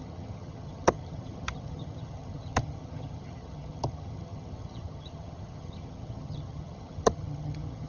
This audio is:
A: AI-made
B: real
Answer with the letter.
A